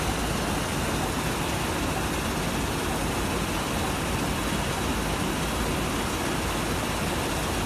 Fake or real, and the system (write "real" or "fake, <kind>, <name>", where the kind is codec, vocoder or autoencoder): real